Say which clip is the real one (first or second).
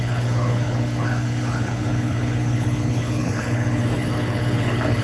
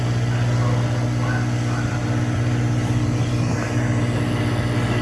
second